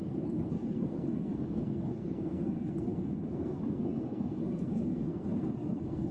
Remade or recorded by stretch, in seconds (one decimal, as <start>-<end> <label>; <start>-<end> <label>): 0.0-6.1 remade